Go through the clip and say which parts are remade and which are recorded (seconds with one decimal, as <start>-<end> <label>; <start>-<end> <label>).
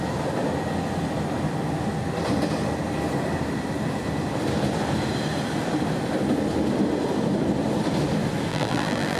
0.0-8.5 recorded; 8.5-9.2 remade